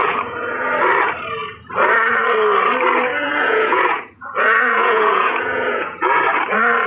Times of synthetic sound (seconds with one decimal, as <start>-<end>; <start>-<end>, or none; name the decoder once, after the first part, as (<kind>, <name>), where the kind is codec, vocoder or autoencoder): 0.0-0.7 (vocoder, Vocos); 3.1-6.2